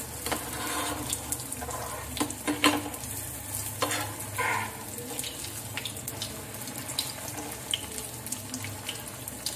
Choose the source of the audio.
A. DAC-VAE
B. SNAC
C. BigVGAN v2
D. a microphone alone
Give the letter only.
D